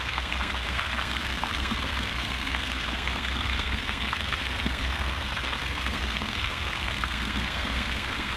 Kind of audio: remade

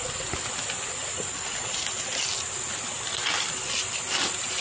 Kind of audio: recorded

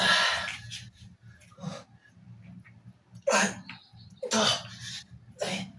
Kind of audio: recorded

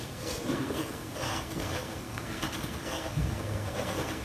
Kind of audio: remade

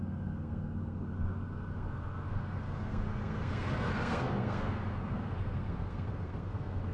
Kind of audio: remade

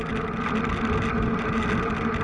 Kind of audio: recorded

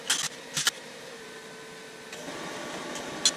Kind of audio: recorded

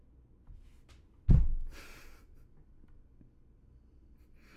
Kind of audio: recorded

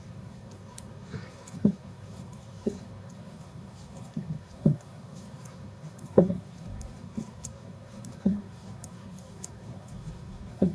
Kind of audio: remade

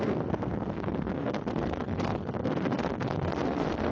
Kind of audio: remade